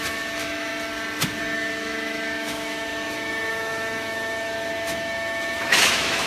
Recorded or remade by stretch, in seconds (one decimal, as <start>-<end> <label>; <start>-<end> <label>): 0.0-0.7 remade; 0.7-1.4 recorded; 1.4-6.3 remade